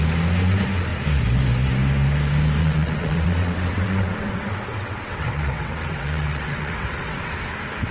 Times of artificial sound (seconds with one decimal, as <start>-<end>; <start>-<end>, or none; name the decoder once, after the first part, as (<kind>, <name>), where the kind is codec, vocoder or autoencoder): 2.6-7.3 (vocoder, WaveNeXt)